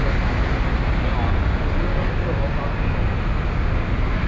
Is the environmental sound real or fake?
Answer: real